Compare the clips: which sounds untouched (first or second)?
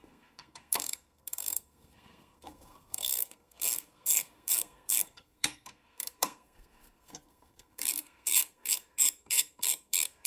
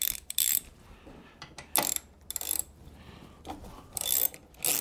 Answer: second